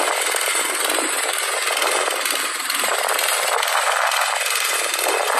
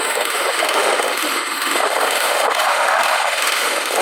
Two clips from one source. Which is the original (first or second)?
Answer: first